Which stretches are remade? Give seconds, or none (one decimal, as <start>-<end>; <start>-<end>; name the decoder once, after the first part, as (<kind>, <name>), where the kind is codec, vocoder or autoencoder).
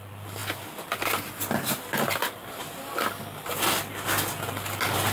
none